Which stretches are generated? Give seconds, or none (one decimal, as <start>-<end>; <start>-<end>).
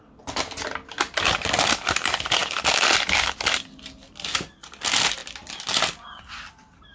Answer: none